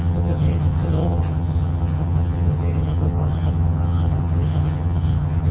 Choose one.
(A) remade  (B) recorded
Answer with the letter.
A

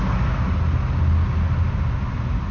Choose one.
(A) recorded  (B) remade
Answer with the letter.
A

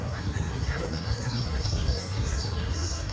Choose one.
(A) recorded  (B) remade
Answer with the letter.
B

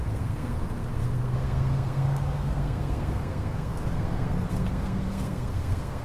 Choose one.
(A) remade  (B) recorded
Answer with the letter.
A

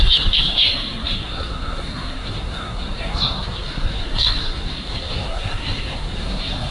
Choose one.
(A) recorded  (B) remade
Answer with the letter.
B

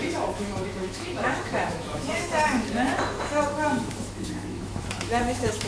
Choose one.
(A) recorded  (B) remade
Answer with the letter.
B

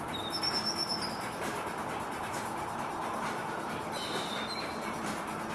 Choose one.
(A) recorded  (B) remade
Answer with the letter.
B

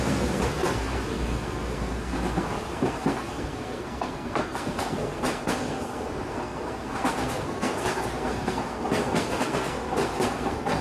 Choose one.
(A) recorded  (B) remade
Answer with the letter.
B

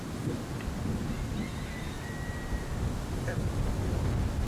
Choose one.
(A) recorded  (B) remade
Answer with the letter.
A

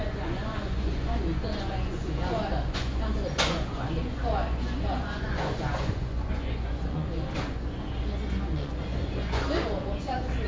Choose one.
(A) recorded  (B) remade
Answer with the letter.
B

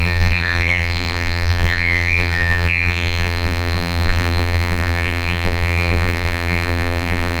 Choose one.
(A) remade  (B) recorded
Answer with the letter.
A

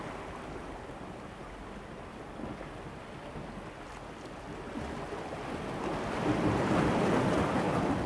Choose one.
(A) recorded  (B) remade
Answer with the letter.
A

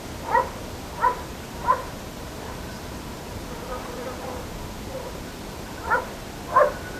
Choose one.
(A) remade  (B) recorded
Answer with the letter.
B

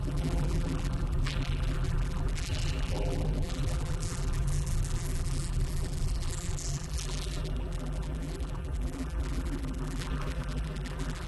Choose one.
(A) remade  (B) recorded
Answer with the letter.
A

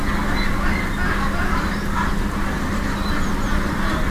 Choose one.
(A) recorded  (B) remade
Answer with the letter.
A